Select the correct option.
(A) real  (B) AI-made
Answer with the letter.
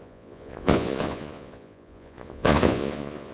B